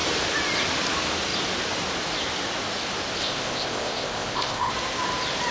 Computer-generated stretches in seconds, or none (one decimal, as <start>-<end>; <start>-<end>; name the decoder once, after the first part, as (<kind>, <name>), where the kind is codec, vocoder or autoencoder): 3.2-4.7 (codec, ZipCodec)